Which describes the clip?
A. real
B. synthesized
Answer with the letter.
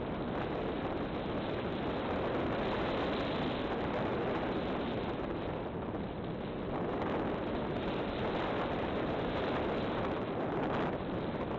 A